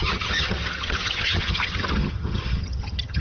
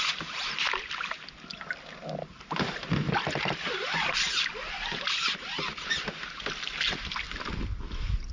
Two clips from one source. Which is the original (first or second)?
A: second